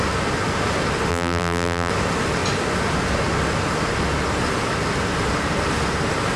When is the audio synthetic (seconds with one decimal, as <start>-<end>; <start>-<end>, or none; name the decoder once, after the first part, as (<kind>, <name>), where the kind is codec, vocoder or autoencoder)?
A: 1.1-1.9 (vocoder, BigVGAN v2)